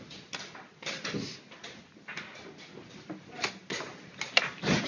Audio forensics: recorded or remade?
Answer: recorded